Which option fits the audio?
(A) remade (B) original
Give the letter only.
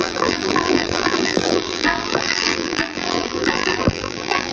A